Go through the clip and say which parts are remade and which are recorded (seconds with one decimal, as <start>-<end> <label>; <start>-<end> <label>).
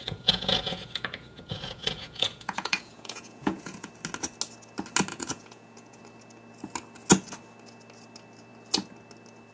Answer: 0.0-3.9 remade; 3.9-5.1 recorded; 5.1-6.0 remade; 6.0-9.5 recorded